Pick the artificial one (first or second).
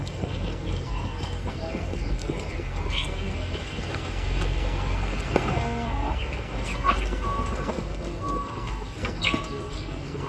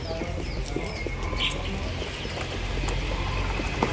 first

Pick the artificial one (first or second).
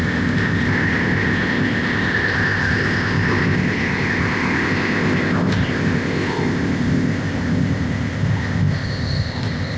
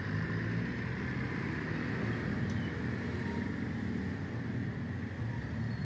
first